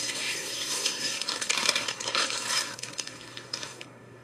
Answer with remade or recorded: remade